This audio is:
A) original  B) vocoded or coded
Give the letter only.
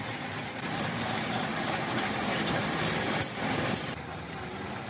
B